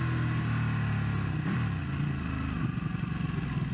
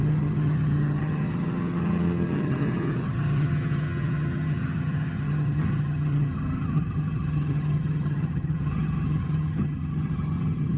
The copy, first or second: second